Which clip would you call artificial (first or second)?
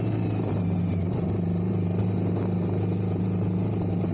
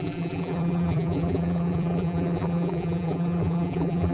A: second